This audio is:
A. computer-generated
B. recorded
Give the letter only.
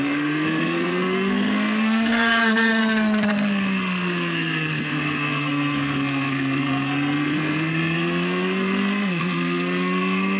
A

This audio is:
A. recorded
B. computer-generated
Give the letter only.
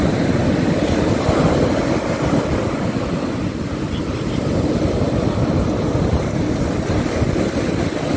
A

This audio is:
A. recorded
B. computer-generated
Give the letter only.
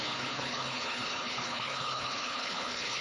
B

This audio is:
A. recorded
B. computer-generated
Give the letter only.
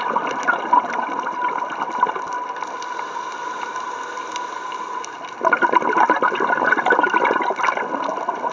A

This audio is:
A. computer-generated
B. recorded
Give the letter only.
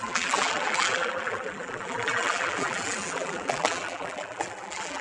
A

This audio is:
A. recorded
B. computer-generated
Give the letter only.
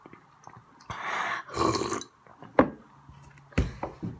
A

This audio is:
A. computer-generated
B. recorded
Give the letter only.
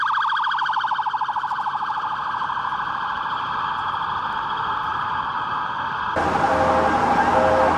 B